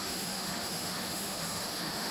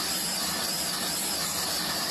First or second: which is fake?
first